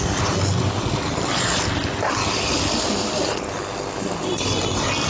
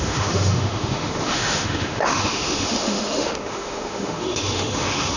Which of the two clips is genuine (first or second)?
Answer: first